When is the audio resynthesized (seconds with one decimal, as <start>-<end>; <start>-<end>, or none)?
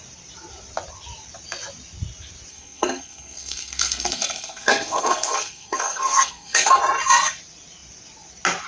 2.5-6.8